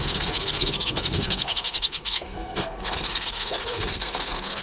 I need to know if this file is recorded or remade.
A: remade